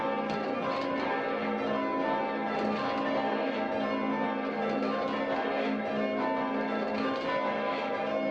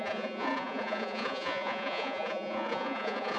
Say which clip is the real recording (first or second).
first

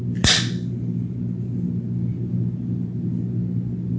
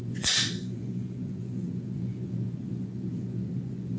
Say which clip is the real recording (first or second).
first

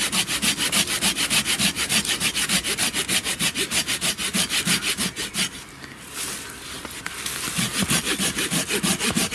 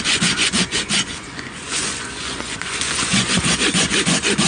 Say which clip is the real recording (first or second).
first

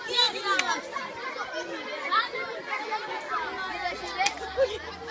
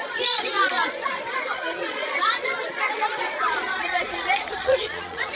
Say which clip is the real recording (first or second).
first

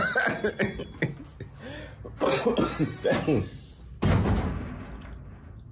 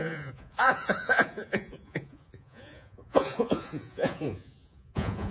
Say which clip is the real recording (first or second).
first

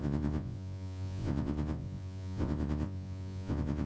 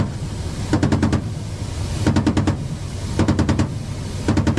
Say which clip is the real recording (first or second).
second